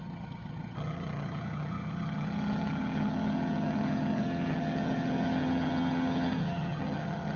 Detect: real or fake fake